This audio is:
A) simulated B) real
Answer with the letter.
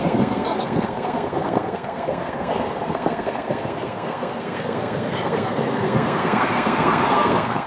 A